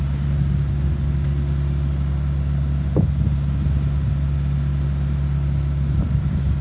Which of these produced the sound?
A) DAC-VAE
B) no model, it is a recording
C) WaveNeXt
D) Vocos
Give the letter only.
B